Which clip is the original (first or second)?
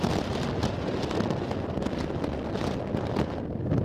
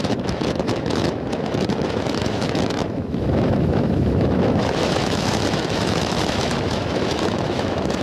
first